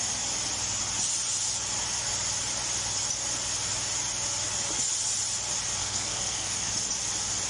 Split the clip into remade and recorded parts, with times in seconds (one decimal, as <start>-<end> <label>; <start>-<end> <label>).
0.0-5.8 recorded; 5.8-6.7 remade; 6.7-7.5 recorded